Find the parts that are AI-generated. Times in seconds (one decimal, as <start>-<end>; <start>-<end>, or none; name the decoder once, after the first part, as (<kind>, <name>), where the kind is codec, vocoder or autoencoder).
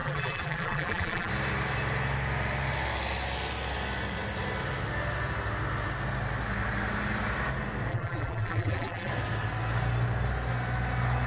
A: 0.0-1.3 (vocoder, BigVGAN v2); 7.9-9.1